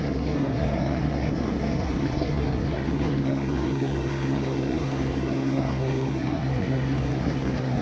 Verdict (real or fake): fake